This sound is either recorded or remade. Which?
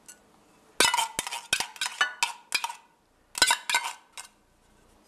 recorded